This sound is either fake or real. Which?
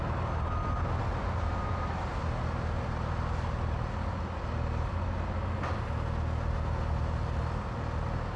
real